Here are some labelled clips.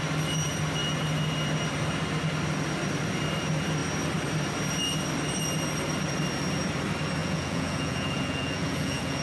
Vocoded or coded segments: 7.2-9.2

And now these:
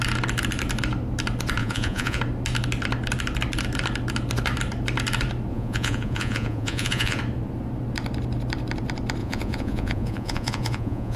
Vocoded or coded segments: 1.6-2.2; 5.5-7.2; 9.2-11.2

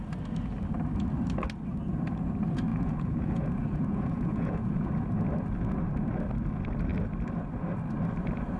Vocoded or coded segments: 2.7-4.9

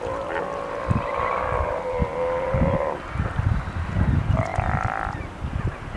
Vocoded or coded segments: none

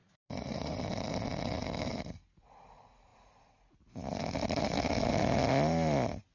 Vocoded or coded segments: 0.0-0.8

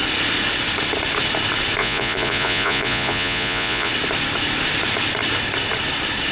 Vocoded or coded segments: 1.8-3.9